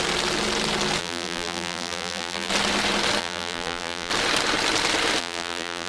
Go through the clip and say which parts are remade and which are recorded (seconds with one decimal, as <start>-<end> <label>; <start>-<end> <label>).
0.0-1.0 recorded; 1.0-2.5 remade; 2.5-3.2 recorded; 3.2-4.1 remade; 4.1-5.2 recorded; 5.2-5.9 remade